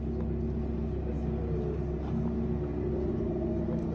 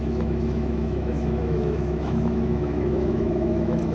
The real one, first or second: first